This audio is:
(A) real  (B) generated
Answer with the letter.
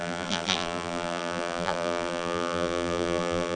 B